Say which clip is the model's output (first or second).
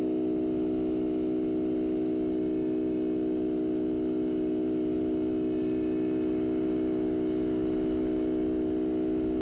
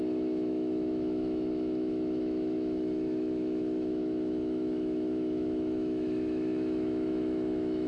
second